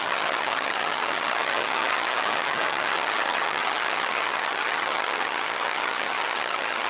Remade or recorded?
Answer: remade